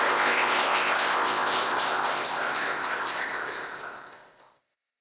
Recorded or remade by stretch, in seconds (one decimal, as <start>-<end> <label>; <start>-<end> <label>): 0.0-5.0 remade